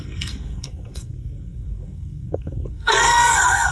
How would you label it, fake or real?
fake